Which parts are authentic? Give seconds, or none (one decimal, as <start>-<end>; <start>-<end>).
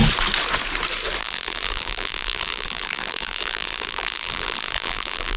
0.0-1.2